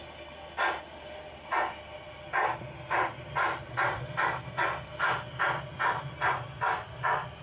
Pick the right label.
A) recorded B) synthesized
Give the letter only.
A